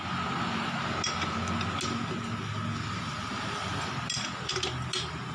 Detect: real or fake real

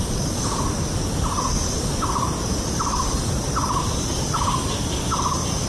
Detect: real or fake real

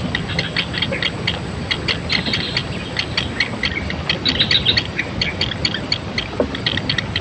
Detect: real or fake real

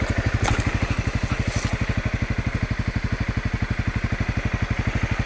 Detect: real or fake real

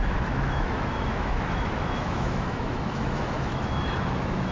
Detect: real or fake fake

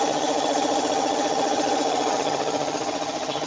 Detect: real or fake fake